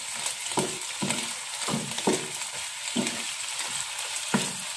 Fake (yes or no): no